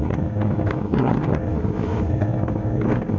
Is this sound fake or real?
fake